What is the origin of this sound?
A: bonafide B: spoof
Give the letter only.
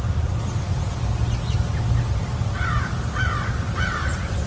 A